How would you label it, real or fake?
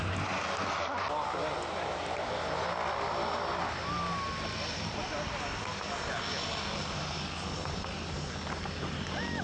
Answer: real